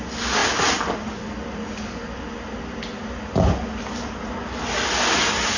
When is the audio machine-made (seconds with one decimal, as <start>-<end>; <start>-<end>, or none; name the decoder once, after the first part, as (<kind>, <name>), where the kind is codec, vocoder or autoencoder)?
none